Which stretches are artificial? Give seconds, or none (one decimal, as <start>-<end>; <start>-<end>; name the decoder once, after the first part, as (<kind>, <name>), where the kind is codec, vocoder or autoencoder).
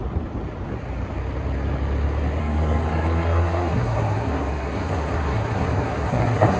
2.4-6.6 (codec, SNAC)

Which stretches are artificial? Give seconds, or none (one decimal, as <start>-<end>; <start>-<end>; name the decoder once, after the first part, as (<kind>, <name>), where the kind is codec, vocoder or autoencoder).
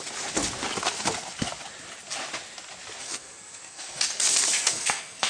3.0-4.0 (codec, SNAC); 4.4-5.3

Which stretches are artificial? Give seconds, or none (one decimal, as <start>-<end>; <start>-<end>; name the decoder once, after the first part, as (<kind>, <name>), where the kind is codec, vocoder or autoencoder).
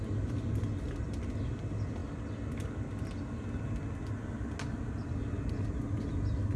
none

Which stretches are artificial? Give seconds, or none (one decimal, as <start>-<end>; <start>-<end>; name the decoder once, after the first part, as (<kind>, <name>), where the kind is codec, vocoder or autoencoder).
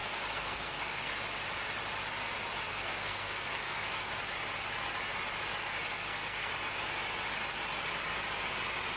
0.0-1.1 (codec, SNAC); 2.7-4.1; 5.9-6.5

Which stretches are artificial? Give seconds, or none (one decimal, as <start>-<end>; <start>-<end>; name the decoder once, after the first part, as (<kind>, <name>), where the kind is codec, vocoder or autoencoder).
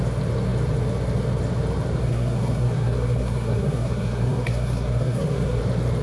2.0-5.6 (codec, SNAC)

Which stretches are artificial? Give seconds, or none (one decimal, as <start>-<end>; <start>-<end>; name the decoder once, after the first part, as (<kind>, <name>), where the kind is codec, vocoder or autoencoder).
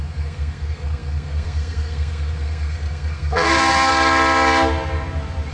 0.0-3.9 (codec, SNAC)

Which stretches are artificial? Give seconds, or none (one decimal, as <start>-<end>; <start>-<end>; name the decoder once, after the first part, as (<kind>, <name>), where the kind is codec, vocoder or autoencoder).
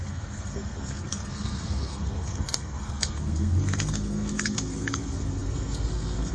0.0-6.3 (codec, SNAC)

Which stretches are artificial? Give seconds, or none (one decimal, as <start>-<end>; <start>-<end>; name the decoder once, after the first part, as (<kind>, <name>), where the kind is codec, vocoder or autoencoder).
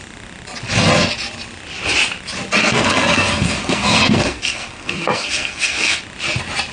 2.6-6.0 (codec, SNAC)